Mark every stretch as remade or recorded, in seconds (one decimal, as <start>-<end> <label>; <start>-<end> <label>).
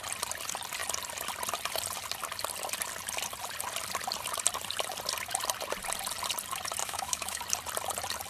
0.0-6.8 recorded; 6.8-7.4 remade; 7.4-8.3 recorded